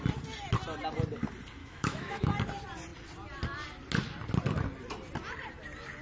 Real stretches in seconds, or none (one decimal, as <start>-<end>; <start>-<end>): 0.0-1.6; 2.3-6.0